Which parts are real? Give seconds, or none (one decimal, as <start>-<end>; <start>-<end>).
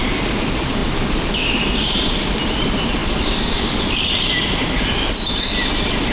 0.0-3.0; 4.1-6.1